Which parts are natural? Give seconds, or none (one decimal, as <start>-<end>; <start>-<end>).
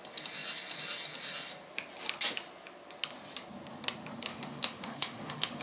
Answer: 0.0-4.3